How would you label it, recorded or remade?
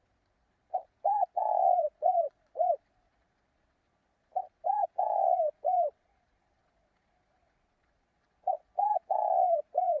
remade